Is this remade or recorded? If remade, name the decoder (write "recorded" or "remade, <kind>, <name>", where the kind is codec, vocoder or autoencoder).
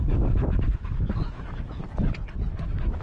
recorded